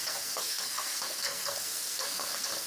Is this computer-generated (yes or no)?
yes